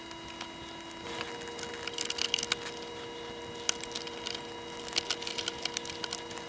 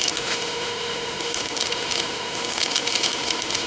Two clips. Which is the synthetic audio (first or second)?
second